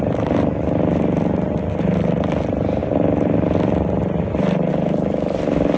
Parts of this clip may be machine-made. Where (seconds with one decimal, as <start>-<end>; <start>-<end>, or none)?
none